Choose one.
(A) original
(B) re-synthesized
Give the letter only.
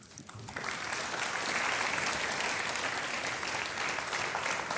A